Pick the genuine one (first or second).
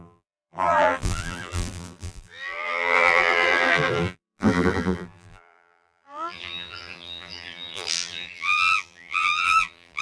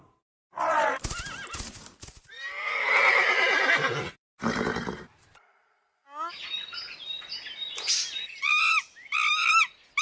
second